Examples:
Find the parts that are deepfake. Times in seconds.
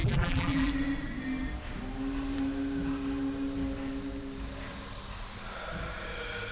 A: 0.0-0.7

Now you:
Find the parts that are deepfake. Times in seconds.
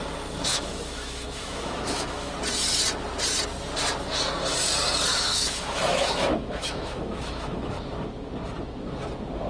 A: 0.5-2.3; 5.1-7.7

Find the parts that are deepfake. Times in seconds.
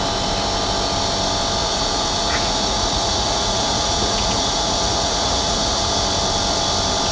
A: 1.6-5.9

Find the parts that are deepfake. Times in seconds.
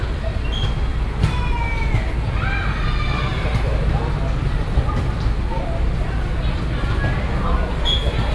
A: none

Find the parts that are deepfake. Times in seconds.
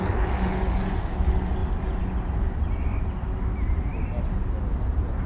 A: none